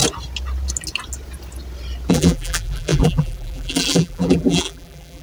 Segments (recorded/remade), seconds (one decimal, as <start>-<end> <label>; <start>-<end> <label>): 0.0-2.1 recorded; 2.1-5.2 remade